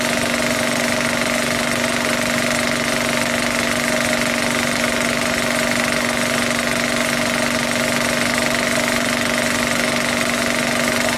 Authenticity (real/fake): real